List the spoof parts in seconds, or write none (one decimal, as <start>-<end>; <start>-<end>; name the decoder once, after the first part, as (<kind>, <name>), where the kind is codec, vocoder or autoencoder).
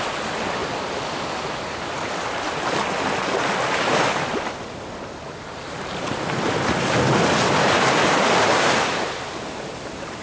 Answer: none